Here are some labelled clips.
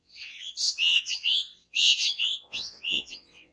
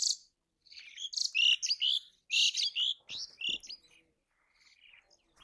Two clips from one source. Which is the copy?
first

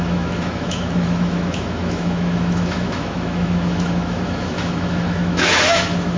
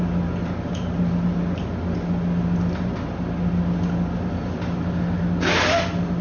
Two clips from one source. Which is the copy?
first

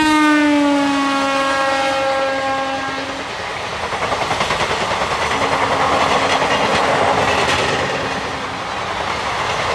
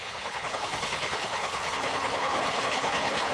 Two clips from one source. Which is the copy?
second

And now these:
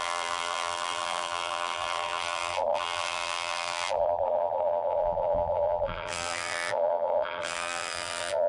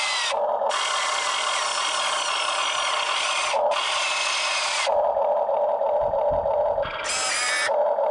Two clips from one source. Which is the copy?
first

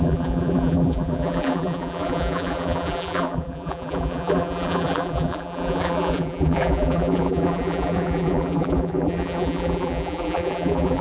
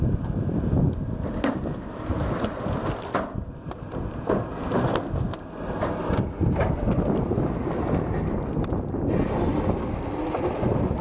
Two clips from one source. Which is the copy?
first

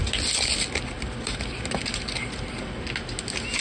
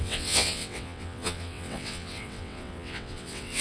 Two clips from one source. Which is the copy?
second